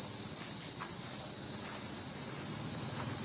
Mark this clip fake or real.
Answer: real